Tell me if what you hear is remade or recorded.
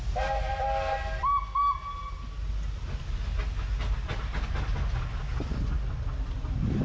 recorded